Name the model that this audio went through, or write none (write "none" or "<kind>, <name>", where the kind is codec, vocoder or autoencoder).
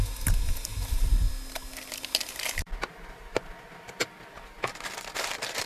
none